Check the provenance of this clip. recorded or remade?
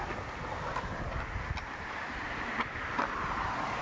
recorded